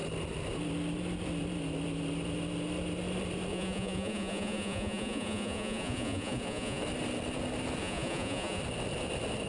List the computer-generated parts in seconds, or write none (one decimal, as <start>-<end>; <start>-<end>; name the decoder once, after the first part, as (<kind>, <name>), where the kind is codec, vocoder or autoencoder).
3.5-6.8 (vocoder, Vocos); 7.8-8.6

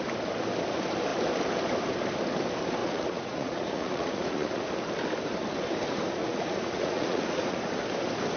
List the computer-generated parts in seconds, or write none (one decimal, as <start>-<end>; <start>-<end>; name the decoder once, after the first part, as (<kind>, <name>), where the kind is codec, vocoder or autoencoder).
2.8-4.7 (vocoder, Vocos); 6.2-7.6

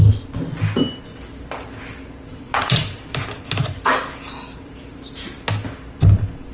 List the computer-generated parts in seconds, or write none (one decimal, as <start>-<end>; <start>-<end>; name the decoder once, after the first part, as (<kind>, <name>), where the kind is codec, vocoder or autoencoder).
2.3-3.0 (vocoder, Vocos)

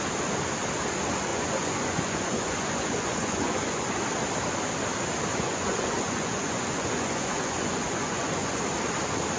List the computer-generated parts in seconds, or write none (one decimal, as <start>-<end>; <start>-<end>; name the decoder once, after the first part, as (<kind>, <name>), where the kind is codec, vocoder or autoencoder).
1.3-4.0 (vocoder, Vocos); 5.3-8.6

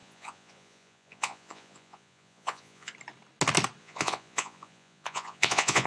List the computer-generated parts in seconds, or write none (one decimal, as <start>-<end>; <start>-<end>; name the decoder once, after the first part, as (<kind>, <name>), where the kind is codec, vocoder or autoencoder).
0.0-2.9 (vocoder, Vocos); 3.8-5.9